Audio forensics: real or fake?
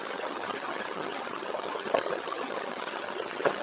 fake